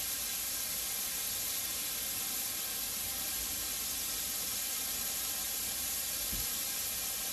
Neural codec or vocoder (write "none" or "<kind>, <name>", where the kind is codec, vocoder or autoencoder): none